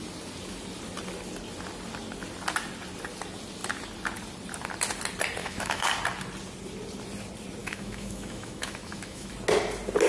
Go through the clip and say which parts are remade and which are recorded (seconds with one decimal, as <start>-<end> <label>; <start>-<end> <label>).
0.0-5.4 recorded; 5.4-5.9 remade; 5.9-7.6 recorded; 7.6-9.3 remade; 9.3-10.1 recorded

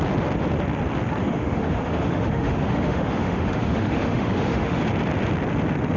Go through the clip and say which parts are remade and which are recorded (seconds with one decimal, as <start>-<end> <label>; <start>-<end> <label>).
0.0-1.2 recorded; 1.2-4.8 remade; 4.8-6.0 recorded

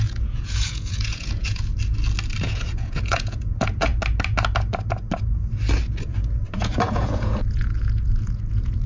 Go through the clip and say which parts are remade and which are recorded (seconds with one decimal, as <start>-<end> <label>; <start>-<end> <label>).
0.0-1.7 remade; 1.7-2.4 recorded; 2.4-3.9 remade; 3.9-6.6 recorded; 6.6-8.9 remade

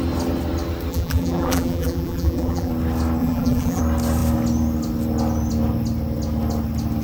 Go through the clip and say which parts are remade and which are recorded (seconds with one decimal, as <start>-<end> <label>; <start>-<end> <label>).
0.0-0.9 recorded; 0.9-2.7 remade; 2.7-3.2 recorded; 3.2-3.8 remade; 3.8-7.0 recorded

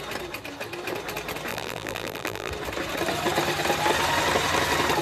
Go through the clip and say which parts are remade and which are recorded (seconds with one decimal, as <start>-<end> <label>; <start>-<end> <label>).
0.0-1.5 recorded; 1.5-2.5 remade; 2.5-5.0 recorded

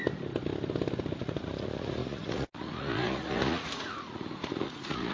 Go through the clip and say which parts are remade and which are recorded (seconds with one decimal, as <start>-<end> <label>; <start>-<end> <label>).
0.0-1.2 recorded; 1.2-5.1 remade

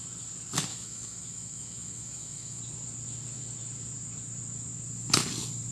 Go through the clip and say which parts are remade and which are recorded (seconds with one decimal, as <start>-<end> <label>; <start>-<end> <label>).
0.0-0.7 recorded; 0.7-2.6 remade; 2.6-5.7 recorded

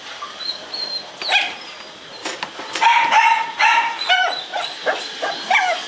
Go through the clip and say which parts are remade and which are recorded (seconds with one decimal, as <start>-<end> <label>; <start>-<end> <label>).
0.0-2.2 recorded; 2.2-4.1 remade; 4.1-4.5 recorded; 4.5-5.3 remade; 5.3-5.9 recorded